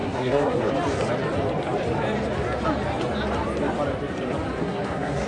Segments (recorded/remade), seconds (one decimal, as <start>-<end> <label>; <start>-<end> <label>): 0.0-0.7 remade; 0.7-4.6 recorded; 4.6-5.3 remade